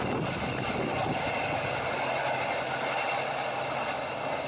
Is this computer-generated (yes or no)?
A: no